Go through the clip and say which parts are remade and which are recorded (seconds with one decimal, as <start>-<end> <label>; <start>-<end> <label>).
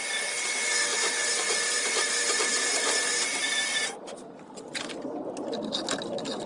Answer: 0.0-0.9 recorded; 0.9-2.1 remade; 2.1-2.5 recorded; 2.5-4.9 remade; 4.9-6.5 recorded